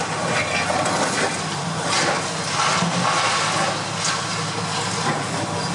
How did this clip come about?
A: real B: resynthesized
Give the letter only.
A